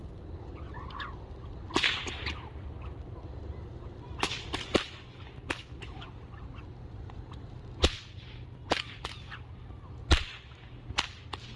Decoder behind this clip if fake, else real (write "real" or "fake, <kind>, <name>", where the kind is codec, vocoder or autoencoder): real